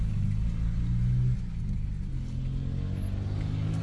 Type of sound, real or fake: real